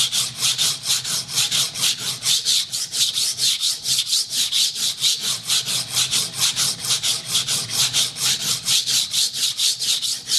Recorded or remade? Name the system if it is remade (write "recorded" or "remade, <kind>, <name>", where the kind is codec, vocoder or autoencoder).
recorded